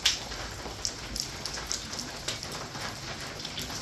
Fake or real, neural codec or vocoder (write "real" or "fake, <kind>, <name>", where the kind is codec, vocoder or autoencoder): real